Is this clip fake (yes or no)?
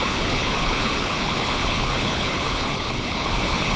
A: yes